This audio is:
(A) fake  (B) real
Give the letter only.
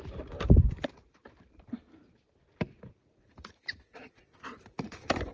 A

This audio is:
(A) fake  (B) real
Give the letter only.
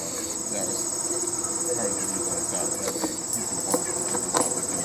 B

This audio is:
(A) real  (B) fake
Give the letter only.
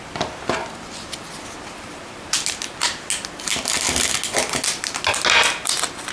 A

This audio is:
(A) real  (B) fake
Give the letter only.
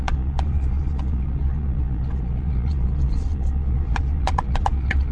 B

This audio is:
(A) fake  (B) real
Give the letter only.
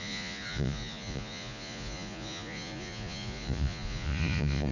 A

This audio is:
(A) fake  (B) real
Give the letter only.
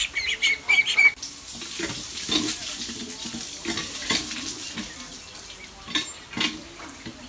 B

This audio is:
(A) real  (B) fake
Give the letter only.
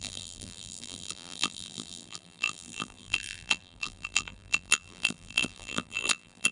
B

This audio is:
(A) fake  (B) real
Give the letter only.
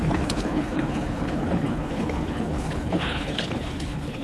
A